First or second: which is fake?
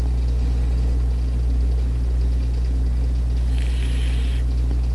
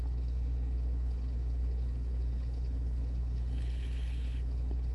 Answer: second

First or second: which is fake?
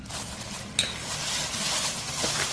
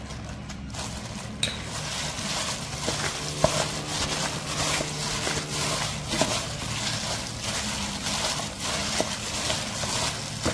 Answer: first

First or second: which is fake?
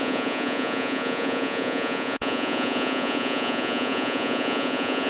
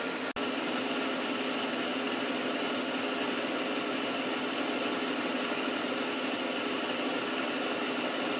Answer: first